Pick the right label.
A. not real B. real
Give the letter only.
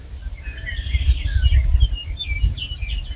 B